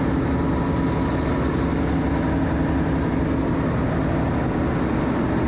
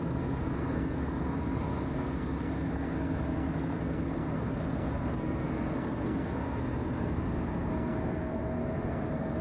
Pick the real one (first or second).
first